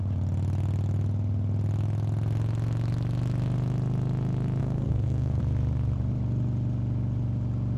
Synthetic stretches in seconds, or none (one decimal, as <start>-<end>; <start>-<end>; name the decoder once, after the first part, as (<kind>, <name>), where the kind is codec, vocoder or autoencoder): 4.6-5.4 (codec, SNAC)